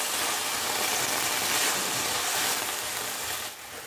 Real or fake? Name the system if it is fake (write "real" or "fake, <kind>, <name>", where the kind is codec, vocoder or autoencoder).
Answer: real